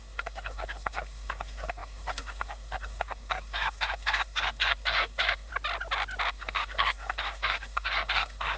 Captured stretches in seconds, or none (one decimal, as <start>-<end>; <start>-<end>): 5.5-6.3